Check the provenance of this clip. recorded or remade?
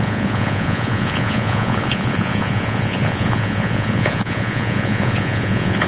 remade